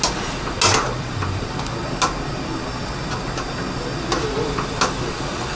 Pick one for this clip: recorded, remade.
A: recorded